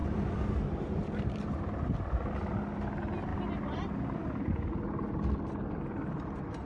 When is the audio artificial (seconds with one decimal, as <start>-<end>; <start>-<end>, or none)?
0.0-0.5; 3.3-4.6